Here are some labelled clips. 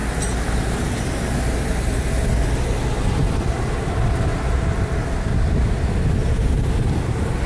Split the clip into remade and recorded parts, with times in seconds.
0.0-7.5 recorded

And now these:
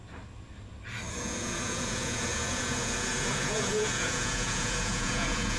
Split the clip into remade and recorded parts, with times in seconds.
0.0-1.1 recorded; 1.1-5.6 remade

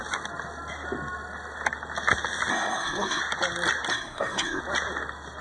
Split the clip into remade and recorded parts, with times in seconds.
0.0-2.5 recorded; 2.5-3.2 remade; 3.2-3.9 recorded; 3.9-4.6 remade; 4.6-5.4 recorded

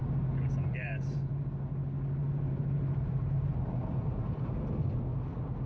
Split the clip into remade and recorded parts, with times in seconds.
0.0-0.7 recorded; 0.7-1.4 remade; 1.4-2.2 recorded; 2.2-4.7 remade; 4.7-5.7 recorded

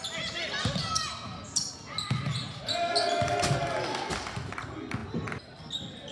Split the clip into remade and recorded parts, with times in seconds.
0.0-6.1 recorded

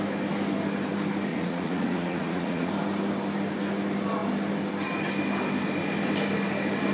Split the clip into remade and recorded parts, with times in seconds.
0.0-1.3 recorded; 1.3-2.7 remade; 2.7-6.9 recorded

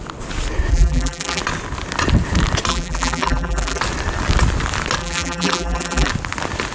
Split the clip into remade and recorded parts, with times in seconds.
0.0-0.7 recorded; 0.7-1.4 remade; 1.4-2.7 recorded; 2.7-3.8 remade; 3.8-5.0 recorded; 5.0-6.1 remade; 6.1-6.7 recorded